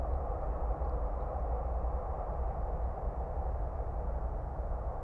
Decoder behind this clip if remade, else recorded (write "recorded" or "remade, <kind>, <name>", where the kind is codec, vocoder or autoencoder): recorded